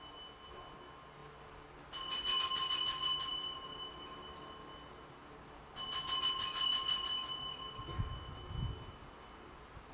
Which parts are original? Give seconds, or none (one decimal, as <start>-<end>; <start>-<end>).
0.0-9.9